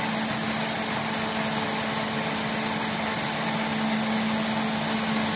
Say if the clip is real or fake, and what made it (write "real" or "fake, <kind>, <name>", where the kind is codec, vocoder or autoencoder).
real